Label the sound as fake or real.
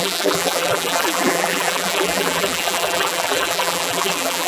fake